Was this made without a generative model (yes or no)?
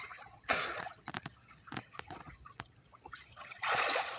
no